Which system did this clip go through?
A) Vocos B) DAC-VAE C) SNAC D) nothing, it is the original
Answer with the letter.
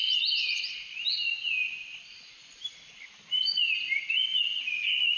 D